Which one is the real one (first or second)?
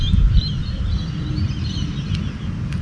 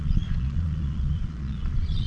first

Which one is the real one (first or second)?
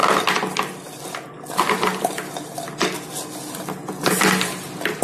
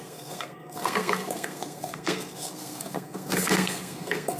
first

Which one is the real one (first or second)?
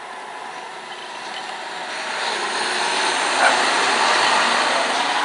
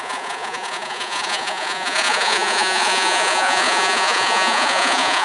first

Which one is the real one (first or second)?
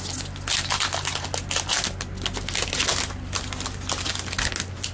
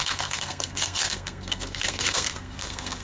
first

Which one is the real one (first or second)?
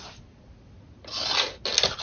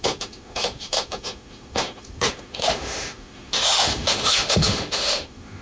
first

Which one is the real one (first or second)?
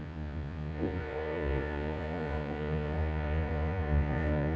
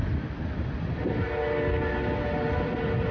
second